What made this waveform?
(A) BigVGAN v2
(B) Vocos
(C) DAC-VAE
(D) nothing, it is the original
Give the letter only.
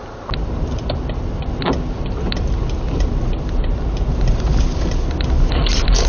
D